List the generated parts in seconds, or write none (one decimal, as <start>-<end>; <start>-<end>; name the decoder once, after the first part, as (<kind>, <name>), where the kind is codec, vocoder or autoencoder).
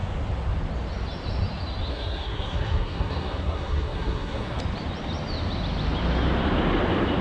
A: 1.9-4.6 (codec, SNAC)